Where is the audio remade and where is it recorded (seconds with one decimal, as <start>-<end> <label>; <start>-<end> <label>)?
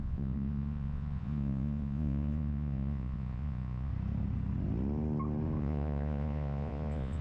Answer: 0.0-3.9 remade; 3.9-5.6 recorded; 5.6-7.2 remade